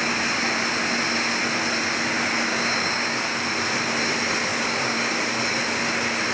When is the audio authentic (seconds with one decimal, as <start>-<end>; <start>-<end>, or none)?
0.0-2.5; 3.2-4.5; 5.1-6.3